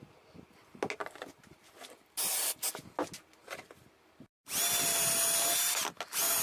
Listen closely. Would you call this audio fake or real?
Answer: real